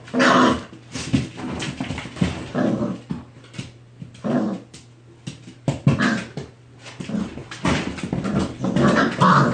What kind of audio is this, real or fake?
real